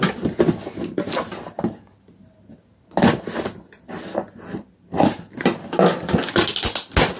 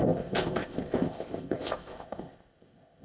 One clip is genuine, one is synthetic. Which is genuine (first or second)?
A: first